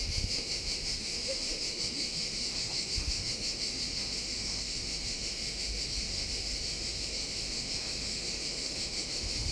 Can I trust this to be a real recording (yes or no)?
no